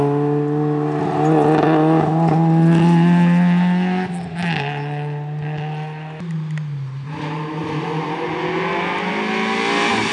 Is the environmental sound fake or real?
real